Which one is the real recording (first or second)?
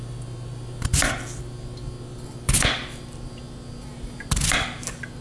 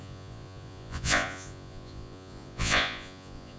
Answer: first